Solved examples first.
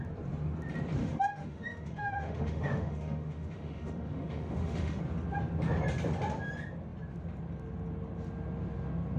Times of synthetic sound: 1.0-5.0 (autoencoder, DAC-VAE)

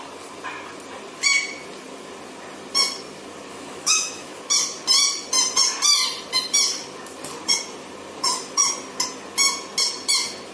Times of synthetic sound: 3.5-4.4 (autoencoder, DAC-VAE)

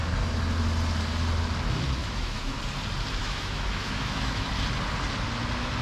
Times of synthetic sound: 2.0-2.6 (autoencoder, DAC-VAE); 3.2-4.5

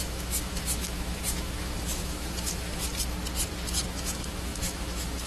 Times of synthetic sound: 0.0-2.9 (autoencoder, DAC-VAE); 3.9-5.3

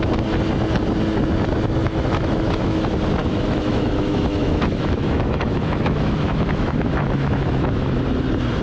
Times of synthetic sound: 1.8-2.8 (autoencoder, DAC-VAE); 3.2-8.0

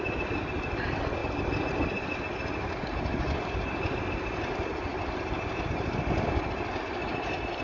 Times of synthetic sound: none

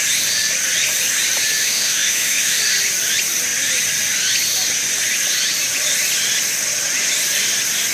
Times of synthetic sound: 1.6-2.6 (autoencoder, DAC-VAE)